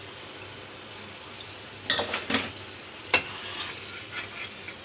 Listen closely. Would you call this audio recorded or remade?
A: recorded